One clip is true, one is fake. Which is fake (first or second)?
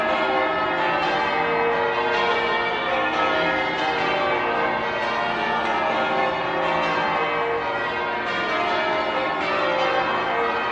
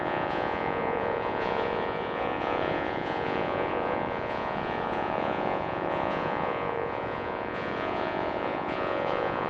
second